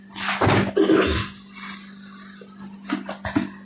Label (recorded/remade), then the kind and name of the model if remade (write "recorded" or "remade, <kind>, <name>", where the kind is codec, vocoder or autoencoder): recorded